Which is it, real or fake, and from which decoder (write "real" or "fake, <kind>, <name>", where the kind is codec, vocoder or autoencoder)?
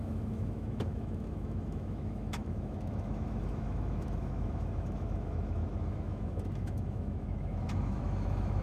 fake, autoencoder, DAC-VAE